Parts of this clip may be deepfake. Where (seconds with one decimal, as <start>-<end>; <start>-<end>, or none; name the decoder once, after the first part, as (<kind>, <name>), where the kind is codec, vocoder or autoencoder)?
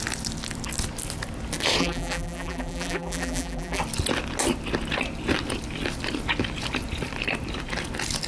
1.8-3.8 (vocoder, BigVGAN v2)